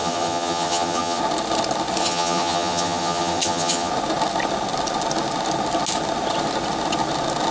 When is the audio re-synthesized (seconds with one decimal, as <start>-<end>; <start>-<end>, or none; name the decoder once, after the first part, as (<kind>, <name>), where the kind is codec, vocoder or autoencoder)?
0.0-1.2 (vocoder, HiFi-GAN); 2.0-3.9